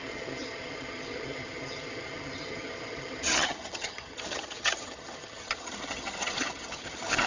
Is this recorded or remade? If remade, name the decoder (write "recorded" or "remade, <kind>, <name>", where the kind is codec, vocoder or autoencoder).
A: remade, vocoder, HiFi-GAN